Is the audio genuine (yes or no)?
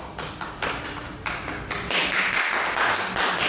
yes